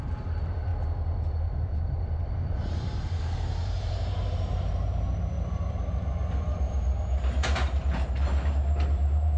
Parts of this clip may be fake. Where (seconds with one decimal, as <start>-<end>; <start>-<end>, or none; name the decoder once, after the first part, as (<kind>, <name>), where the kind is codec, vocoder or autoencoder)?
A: 0.0-0.7 (vocoder, BigVGAN v2); 1.3-9.4